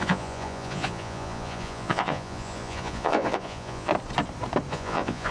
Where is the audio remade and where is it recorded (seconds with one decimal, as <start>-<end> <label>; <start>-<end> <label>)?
0.0-3.9 remade; 3.9-4.7 recorded; 4.7-5.3 remade